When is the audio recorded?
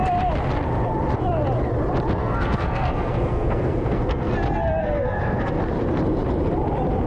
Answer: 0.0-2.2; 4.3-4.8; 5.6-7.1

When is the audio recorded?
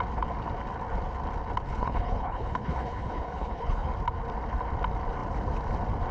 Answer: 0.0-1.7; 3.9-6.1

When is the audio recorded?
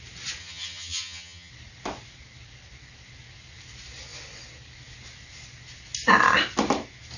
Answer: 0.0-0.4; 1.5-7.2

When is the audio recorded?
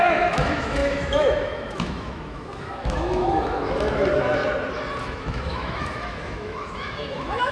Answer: 4.4-5.0